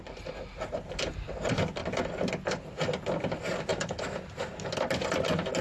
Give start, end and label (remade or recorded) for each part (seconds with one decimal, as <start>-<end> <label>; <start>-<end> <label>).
0.0-3.7 recorded; 3.7-4.2 remade; 4.2-5.6 recorded